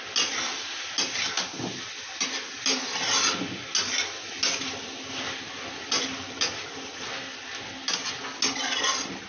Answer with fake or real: real